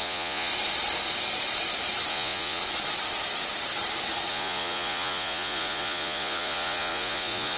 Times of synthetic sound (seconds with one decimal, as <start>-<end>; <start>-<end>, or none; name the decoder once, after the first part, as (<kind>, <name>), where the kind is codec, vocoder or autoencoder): 0.0-0.5 (vocoder, Vocos); 2.1-2.6; 4.3-7.6